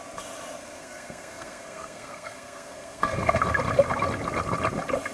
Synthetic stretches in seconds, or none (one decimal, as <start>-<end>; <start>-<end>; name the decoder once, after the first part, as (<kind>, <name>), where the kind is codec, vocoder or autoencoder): 0.6-3.4 (codec, SNAC)